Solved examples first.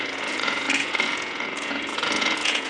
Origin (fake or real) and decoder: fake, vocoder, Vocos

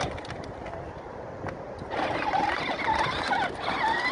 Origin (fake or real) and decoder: real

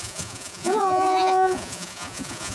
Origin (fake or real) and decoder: fake, vocoder, Vocos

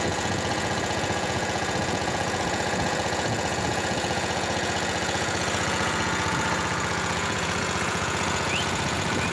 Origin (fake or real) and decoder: fake, vocoder, Vocos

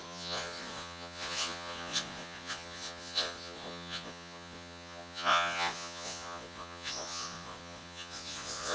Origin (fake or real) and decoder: fake, vocoder, Vocos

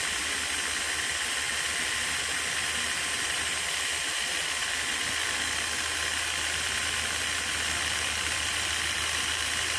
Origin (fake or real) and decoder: real